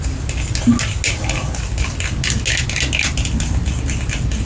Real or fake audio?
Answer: real